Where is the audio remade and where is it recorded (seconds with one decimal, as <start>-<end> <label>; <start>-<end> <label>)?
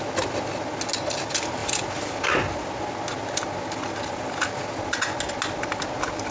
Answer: 0.0-6.3 recorded